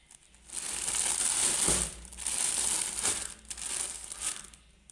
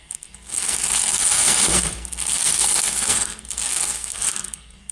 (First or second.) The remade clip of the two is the second